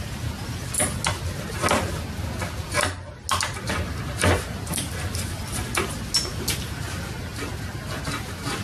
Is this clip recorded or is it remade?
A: recorded